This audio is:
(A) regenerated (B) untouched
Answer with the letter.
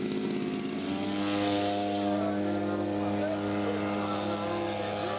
B